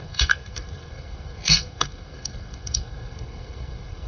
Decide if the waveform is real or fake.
fake